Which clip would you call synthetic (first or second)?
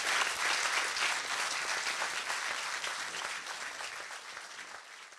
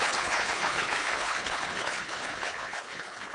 second